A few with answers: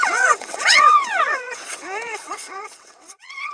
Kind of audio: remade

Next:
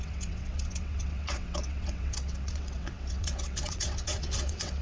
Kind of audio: remade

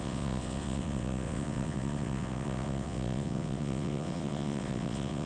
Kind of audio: remade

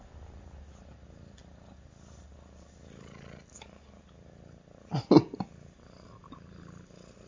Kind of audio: recorded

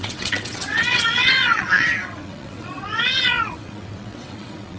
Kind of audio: remade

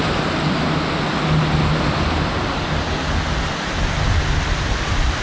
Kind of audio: recorded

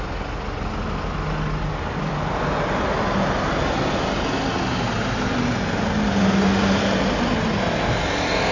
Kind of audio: recorded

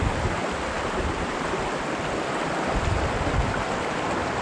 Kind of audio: recorded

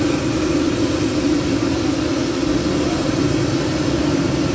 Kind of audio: recorded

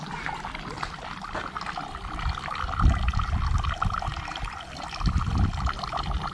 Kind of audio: recorded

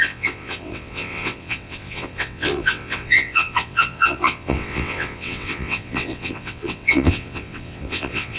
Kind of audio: remade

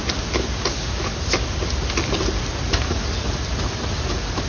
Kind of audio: recorded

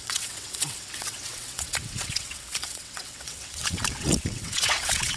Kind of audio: remade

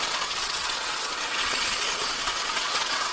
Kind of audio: remade